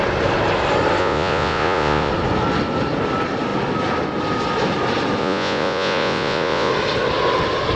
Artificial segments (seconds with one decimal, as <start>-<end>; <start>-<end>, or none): 1.0-2.1; 5.2-6.7